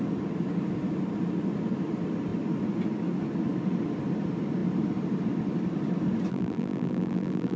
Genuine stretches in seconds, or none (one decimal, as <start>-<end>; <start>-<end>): 0.0-6.3